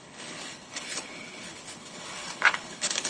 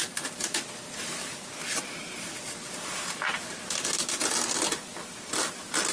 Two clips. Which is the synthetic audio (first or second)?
first